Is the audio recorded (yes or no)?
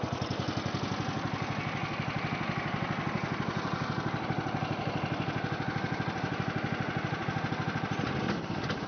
yes